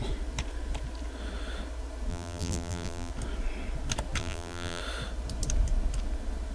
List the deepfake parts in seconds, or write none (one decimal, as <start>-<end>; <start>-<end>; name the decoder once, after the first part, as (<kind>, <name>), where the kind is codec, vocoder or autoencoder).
2.1-3.1 (vocoder, BigVGAN v2); 4.2-4.8